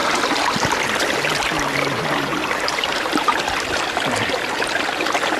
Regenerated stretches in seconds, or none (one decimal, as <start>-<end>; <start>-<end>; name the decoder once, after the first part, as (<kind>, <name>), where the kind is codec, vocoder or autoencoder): 2.3-3.3 (vocoder, BigVGAN v2)